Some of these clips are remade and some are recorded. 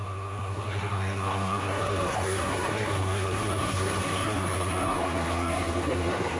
remade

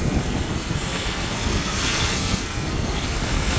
remade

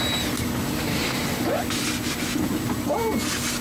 recorded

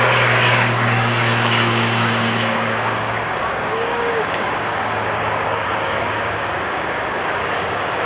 remade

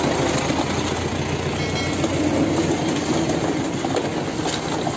recorded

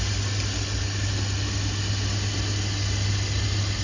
recorded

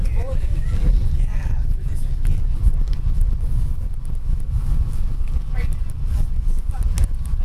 remade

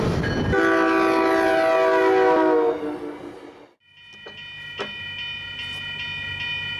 recorded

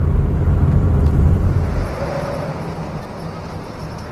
recorded